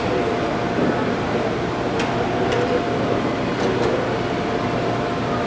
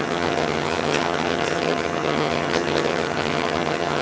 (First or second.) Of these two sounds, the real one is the first